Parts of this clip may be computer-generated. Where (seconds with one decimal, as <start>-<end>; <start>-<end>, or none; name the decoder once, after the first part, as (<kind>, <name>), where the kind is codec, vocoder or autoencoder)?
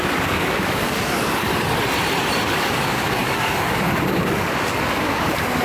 0.0-1.5 (codec, DAC); 2.5-5.6